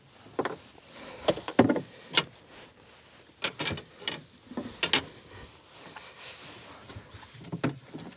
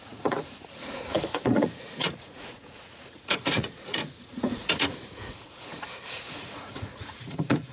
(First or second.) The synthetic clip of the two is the second